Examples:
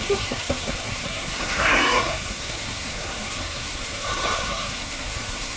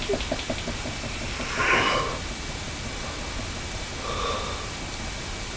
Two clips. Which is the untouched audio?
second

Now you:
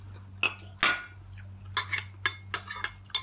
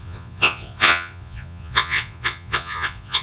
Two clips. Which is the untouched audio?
first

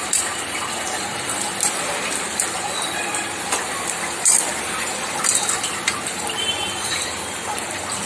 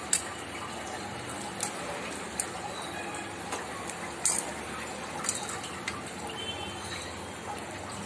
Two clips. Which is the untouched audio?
second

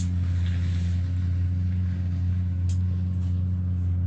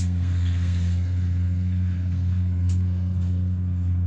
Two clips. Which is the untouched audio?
first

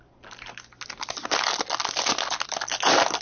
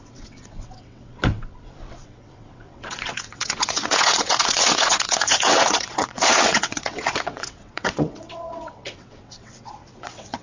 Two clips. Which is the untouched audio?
first